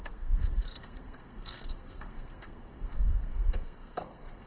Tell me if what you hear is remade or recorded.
remade